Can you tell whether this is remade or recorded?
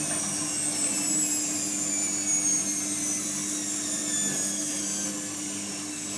recorded